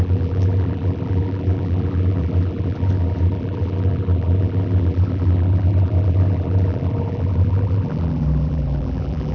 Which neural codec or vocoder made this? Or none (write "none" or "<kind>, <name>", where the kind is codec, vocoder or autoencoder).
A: vocoder, BigVGAN v2